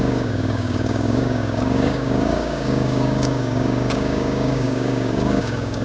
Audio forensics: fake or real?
fake